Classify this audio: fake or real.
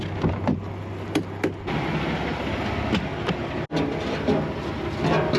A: real